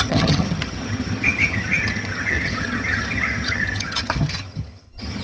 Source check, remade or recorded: remade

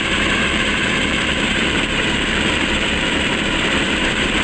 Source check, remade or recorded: remade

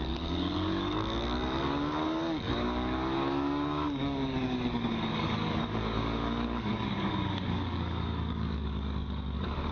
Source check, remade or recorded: remade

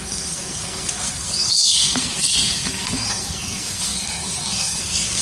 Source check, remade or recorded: remade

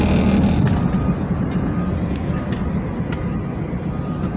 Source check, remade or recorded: recorded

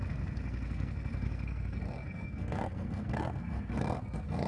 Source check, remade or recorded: remade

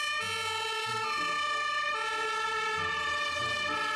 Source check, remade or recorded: recorded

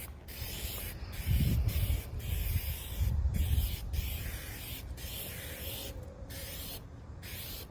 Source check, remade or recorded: recorded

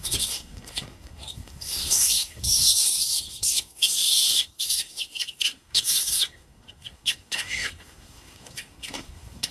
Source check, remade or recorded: remade